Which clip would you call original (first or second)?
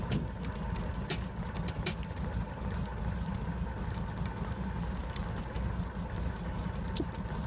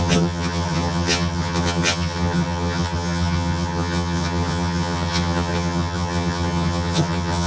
first